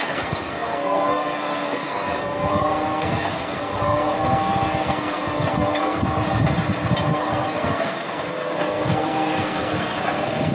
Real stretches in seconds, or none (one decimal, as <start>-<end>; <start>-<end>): 6.0-7.1